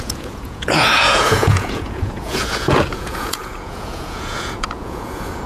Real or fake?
fake